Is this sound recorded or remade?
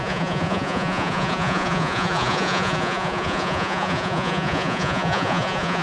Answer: remade